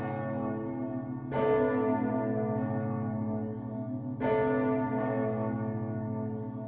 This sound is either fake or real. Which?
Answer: real